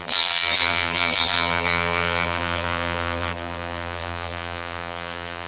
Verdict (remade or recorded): remade